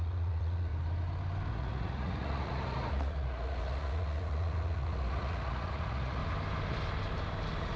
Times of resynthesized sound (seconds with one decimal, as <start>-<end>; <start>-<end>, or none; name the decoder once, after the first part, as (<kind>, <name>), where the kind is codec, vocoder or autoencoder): 0.0-0.7 (vocoder, Vocos); 1.5-6.2